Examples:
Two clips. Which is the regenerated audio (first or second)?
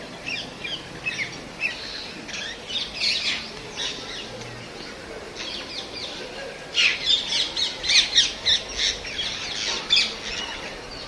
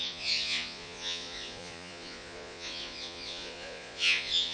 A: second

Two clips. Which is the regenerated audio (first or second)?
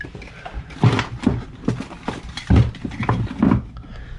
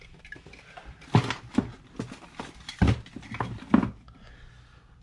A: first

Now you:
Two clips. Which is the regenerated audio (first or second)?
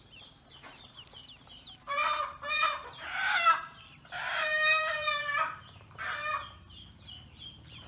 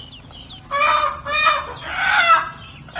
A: first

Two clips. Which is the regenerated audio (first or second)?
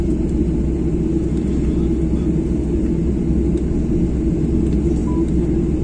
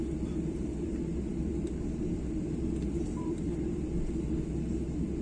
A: second